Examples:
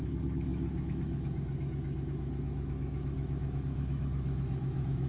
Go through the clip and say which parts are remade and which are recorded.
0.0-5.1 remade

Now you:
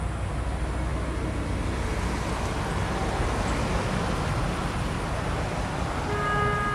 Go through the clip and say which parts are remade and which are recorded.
0.0-6.7 recorded

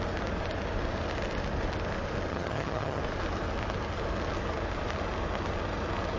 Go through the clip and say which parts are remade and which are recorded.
0.0-2.3 recorded; 2.3-3.0 remade; 3.0-6.2 recorded

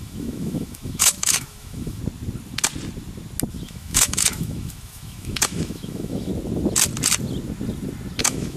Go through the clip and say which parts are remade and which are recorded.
0.0-2.0 remade; 2.0-3.5 recorded; 3.5-6.3 remade; 6.3-8.2 recorded; 8.2-8.6 remade

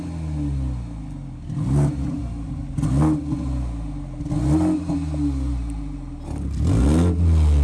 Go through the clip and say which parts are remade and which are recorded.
0.0-7.6 recorded

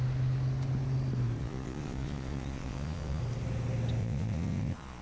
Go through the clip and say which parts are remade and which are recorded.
0.0-1.4 recorded; 1.4-3.2 remade; 3.2-4.0 recorded; 4.0-5.0 remade